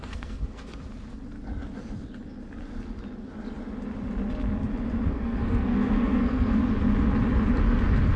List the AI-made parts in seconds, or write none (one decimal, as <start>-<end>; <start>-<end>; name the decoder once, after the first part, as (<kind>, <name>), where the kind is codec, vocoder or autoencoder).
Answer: 0.0-0.7 (codec, SNAC); 5.1-6.6